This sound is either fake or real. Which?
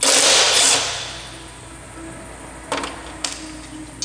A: real